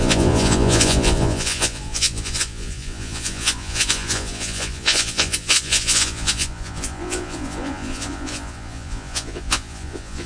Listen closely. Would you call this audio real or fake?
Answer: fake